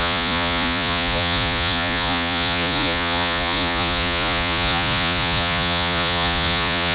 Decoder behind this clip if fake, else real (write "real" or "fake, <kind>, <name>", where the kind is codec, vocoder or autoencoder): fake, vocoder, Vocos